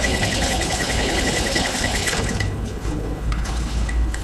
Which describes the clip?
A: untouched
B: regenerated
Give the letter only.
B